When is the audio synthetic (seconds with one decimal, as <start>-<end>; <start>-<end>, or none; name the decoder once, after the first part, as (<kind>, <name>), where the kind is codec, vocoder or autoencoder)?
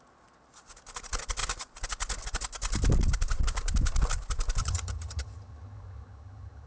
4.6-6.7 (vocoder, HiFi-GAN)